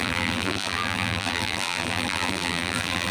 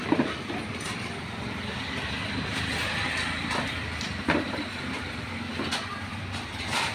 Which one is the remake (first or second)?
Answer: first